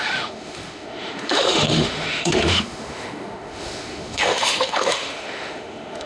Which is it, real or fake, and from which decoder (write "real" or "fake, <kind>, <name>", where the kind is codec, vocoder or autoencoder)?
fake, autoencoder, DAC-VAE